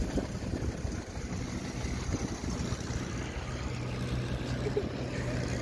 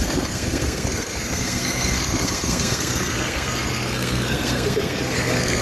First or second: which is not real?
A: second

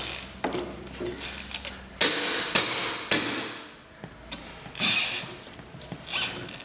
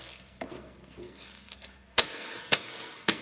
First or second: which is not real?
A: second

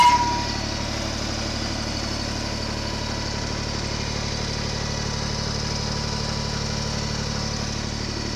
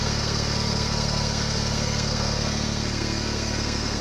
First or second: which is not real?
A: second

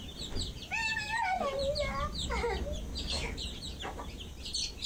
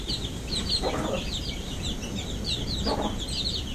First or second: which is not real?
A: second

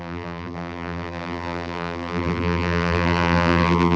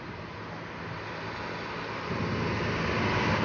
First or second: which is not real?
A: first